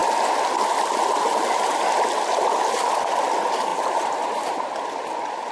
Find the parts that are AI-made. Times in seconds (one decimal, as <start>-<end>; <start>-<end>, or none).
3.7-4.6